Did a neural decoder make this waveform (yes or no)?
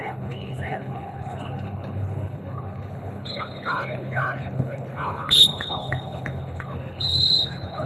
yes